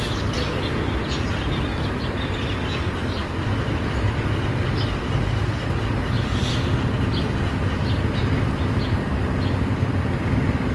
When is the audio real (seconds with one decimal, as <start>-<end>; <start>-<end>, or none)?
0.0-10.7